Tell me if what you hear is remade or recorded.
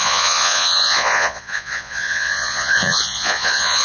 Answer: remade